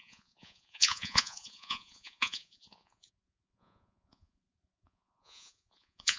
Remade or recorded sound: remade